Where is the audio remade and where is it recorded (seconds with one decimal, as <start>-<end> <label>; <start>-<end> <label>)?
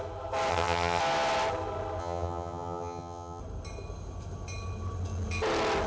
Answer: 0.0-0.5 recorded; 0.5-1.0 remade; 1.0-2.0 recorded; 2.0-3.4 remade; 3.4-5.9 recorded